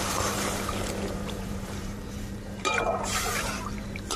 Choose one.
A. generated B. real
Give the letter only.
A